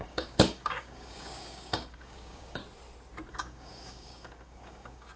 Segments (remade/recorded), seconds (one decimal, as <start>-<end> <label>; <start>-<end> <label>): 0.0-2.6 remade; 2.6-3.3 recorded; 3.3-5.2 remade